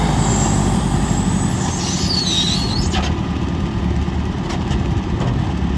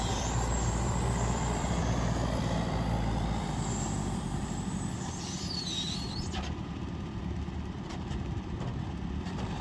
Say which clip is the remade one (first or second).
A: second